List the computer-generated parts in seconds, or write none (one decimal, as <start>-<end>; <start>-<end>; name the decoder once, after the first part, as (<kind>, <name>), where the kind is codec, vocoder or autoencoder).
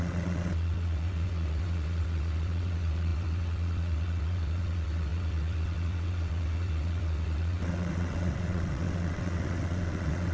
0.0-10.3 (vocoder, WaveNeXt)